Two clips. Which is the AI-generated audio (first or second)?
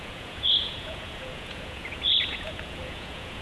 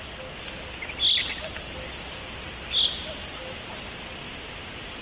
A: first